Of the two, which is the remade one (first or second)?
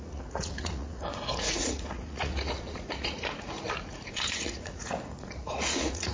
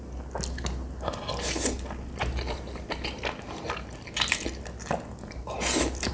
first